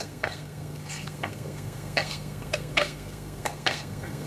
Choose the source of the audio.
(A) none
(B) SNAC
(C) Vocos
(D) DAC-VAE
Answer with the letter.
B